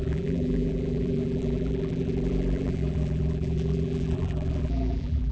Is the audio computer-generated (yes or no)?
yes